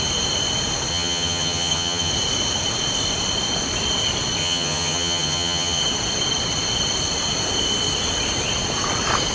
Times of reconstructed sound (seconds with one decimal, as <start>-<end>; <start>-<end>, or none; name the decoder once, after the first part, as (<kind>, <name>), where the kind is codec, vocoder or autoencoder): 0.9-2.1 (vocoder, HiFi-GAN); 4.4-5.8